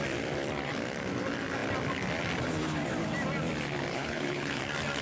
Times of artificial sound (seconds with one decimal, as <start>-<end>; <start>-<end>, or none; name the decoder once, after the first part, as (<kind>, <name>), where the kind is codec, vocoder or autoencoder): 3.9-4.6 (codec, HILCodec)